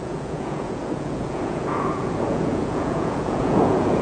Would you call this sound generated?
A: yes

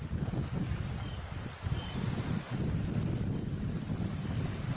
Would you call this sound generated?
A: no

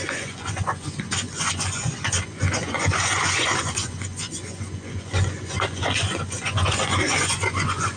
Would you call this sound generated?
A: yes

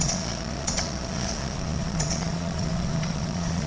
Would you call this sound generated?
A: yes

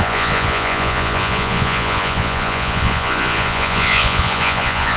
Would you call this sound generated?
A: yes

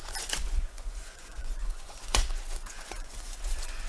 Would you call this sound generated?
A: yes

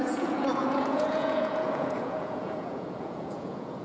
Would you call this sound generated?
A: yes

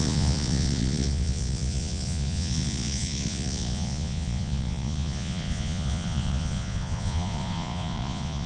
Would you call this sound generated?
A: yes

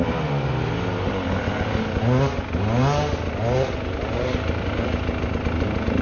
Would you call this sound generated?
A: no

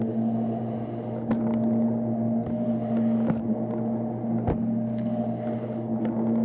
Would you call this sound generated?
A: no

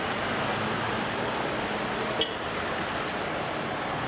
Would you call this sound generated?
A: no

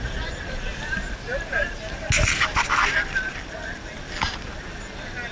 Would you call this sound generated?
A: no